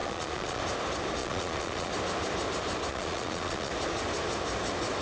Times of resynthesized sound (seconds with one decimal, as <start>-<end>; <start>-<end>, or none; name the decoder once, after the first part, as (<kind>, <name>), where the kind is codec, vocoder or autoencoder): 0.0-0.6 (vocoder, Vocos); 1.2-1.9; 2.9-3.7